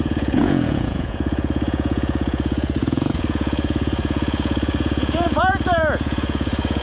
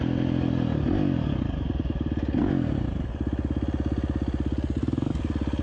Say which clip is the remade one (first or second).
first